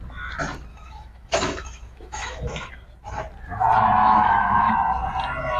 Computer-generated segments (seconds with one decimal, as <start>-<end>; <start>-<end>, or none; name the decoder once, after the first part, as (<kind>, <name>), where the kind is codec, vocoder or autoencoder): 0.7-2.7 (autoencoder, DAC-VAE); 4.0-4.7